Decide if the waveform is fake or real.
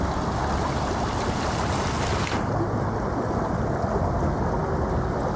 real